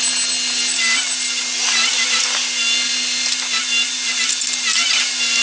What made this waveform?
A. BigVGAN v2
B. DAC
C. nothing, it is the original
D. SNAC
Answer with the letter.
C